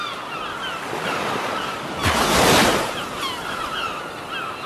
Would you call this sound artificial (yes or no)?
no